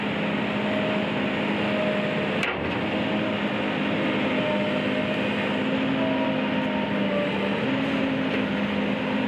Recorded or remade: recorded